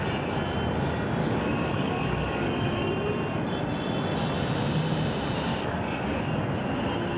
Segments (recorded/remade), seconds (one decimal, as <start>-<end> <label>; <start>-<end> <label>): 0.0-1.2 recorded; 1.2-2.9 remade; 2.9-5.5 recorded; 5.5-6.4 remade; 6.4-7.2 recorded